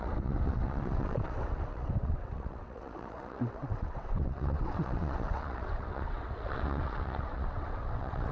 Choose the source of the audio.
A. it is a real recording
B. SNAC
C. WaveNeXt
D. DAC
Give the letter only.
C